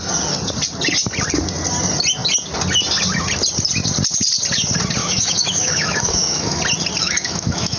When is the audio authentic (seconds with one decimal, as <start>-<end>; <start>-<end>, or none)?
0.0-5.0; 6.6-7.0